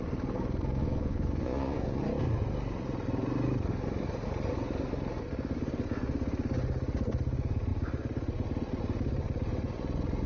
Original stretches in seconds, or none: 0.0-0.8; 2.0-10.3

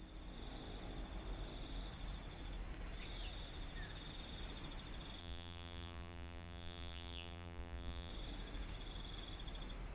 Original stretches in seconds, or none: 0.0-5.2; 8.1-9.9

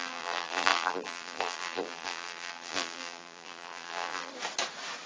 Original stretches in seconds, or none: 4.3-5.1

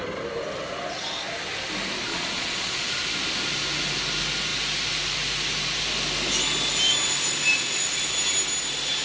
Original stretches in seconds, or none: 0.0-2.1; 3.0-9.0